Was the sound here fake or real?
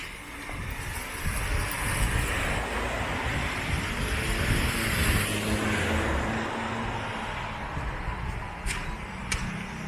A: real